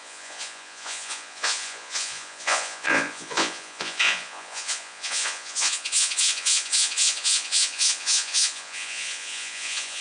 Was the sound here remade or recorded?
remade